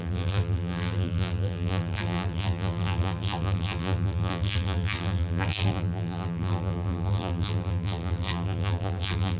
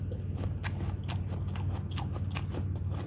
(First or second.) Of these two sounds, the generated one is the first